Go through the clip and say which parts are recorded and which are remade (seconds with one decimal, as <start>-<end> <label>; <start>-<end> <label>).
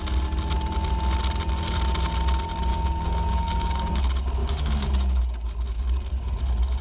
0.0-2.7 recorded; 2.7-4.0 remade; 4.0-4.4 recorded; 4.4-5.2 remade; 5.2-6.8 recorded